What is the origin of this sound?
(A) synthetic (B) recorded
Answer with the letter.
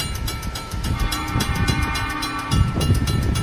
A